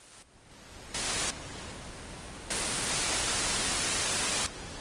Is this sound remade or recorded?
recorded